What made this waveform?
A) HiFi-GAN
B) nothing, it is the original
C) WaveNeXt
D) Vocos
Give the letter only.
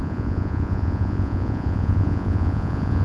D